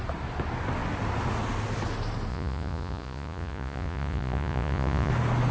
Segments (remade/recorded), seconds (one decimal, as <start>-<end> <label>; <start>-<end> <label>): 0.0-2.3 recorded; 2.3-5.1 remade; 5.1-5.5 recorded